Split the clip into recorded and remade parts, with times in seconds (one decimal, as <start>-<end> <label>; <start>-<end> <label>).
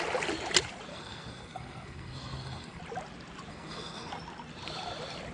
0.0-0.9 recorded; 0.9-2.8 remade; 2.8-3.5 recorded; 3.5-4.1 remade; 4.1-5.3 recorded